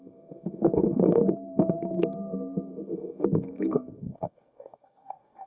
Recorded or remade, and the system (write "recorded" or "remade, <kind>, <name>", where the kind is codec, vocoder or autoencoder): remade, codec, SNAC